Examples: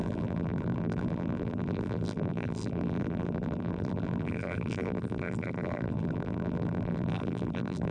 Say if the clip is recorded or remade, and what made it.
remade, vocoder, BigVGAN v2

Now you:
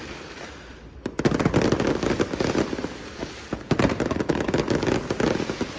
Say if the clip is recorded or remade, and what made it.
remade, vocoder, BigVGAN v2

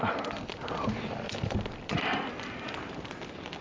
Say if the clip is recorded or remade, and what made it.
remade, vocoder, BigVGAN v2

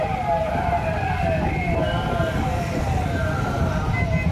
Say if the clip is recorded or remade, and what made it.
recorded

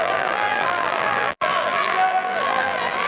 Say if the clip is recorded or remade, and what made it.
remade, vocoder, BigVGAN v2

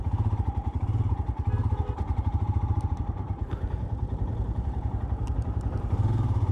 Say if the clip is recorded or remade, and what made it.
remade, vocoder, BigVGAN v2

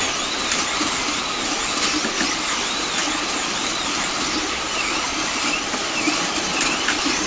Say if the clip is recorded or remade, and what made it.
recorded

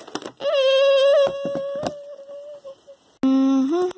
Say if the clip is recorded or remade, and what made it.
recorded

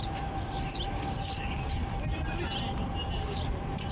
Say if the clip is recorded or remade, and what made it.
recorded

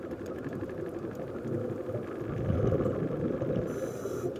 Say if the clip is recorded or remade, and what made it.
recorded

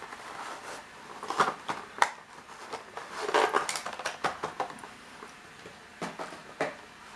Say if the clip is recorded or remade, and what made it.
recorded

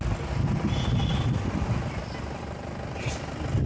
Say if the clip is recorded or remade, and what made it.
recorded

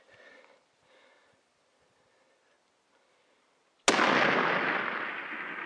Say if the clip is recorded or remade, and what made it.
recorded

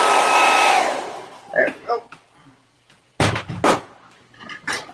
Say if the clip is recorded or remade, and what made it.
remade, vocoder, BigVGAN v2